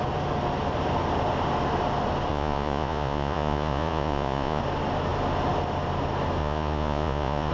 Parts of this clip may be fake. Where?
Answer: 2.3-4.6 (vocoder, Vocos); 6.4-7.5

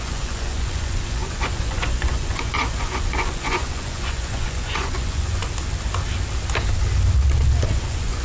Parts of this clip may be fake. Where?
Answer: 0.0-5.4 (vocoder, Vocos); 7.7-8.2